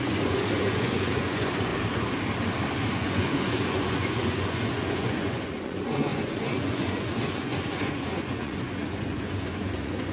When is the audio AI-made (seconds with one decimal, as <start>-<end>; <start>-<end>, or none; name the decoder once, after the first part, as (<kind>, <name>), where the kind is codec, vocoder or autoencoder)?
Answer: 0.0-1.7 (vocoder, Vocos); 2.9-10.1